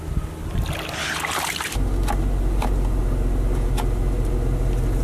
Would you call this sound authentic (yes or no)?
yes